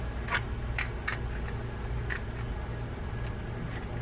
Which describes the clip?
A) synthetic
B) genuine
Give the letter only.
B